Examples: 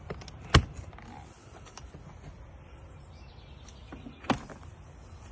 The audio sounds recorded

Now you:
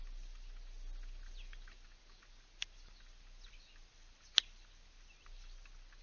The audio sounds recorded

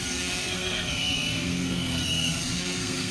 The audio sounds remade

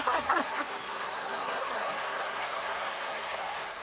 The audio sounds remade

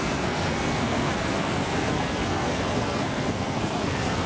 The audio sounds remade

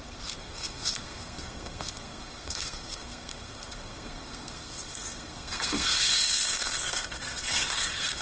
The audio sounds remade